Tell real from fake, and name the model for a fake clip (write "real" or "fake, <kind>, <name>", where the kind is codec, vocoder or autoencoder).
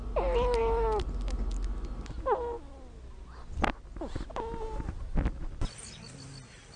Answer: real